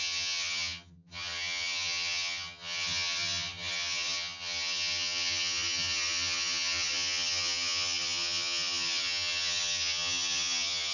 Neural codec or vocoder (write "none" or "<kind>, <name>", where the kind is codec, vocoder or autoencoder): vocoder, HiFi-GAN